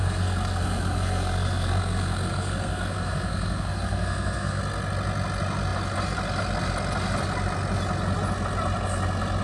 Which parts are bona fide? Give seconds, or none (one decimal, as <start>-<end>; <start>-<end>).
4.6-9.4